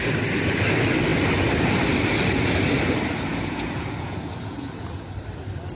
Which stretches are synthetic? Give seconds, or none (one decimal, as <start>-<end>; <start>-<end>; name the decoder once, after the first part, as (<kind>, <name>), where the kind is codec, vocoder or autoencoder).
3.3-5.1 (vocoder, Vocos)